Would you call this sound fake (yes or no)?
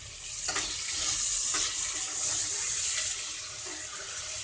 no